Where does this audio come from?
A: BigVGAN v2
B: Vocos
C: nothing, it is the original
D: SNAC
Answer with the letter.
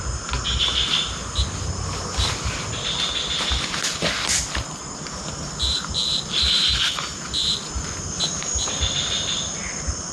C